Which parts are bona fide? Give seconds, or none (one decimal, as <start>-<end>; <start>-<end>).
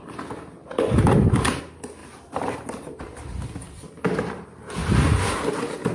0.0-0.6; 1.6-2.0; 3.0-5.9